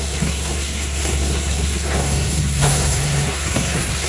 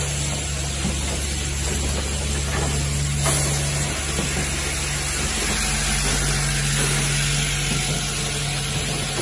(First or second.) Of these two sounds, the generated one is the first